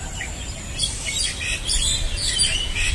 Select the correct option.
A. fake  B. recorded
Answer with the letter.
B